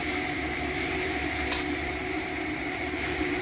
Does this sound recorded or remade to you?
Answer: remade